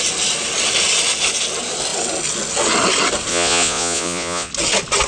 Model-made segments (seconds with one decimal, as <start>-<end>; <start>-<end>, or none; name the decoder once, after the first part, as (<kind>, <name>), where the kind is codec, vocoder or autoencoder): 3.3-4.5 (vocoder, Vocos)